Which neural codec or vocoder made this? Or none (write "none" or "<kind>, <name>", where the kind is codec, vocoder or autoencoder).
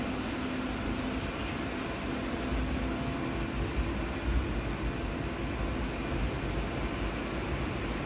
none